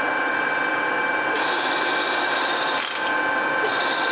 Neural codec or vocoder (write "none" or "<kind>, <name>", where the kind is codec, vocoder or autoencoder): none